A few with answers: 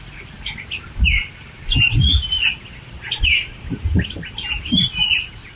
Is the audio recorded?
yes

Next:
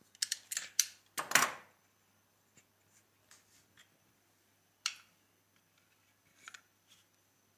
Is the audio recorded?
yes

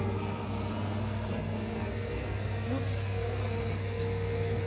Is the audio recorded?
no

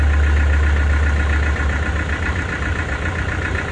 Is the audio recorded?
yes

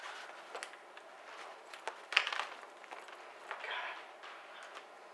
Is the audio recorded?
yes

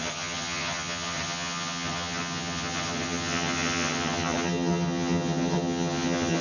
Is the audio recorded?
no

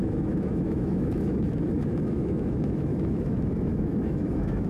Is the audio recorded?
no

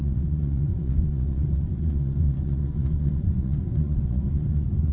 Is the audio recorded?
no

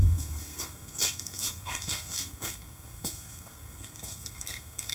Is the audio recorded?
no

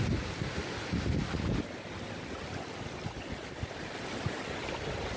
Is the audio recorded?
yes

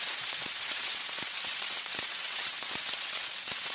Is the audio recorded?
no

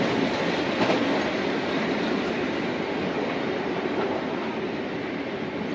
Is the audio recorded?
yes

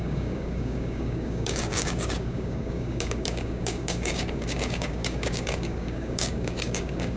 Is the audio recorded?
no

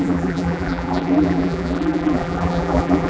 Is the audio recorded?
no